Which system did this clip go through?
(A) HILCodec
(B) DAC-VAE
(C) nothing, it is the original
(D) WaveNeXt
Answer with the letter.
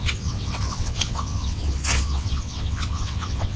D